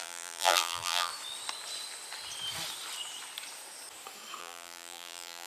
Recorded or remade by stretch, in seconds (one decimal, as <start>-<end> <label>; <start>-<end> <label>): 0.0-1.1 remade; 1.1-4.4 recorded; 4.4-5.5 remade